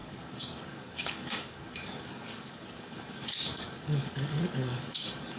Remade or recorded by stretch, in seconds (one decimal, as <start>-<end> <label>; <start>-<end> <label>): 0.0-5.4 remade